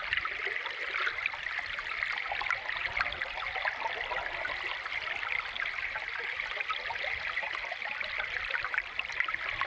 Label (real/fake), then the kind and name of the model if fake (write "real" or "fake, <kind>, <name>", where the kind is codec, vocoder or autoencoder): real